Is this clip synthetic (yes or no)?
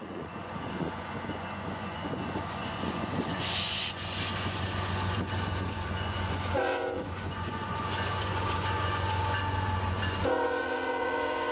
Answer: yes